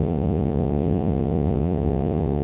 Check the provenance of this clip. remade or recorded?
remade